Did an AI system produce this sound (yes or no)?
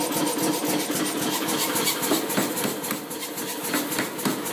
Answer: no